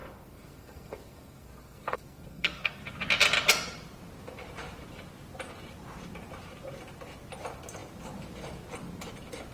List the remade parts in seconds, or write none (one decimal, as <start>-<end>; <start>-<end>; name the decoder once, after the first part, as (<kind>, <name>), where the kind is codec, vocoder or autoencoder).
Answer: 0.0-2.8 (codec, SNAC)